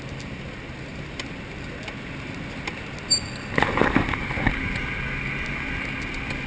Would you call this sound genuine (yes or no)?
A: yes